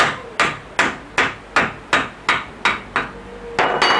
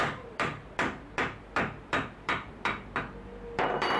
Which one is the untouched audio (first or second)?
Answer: first